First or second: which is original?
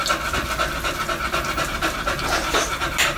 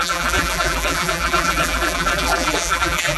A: first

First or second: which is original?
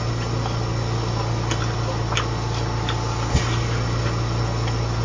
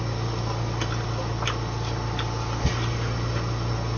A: first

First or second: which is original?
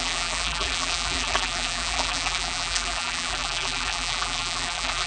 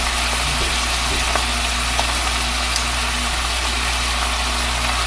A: second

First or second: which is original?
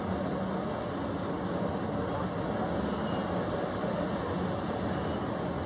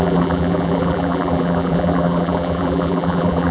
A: first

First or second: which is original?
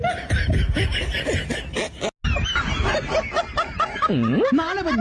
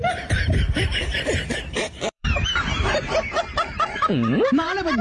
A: first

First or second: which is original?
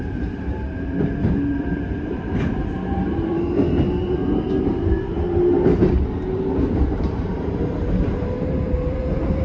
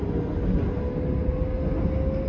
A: second